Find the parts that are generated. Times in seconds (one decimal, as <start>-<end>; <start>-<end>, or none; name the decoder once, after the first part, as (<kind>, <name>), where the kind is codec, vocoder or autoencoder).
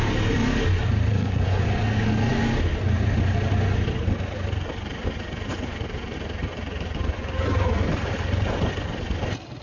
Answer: 1.1-1.6 (codec, SNAC)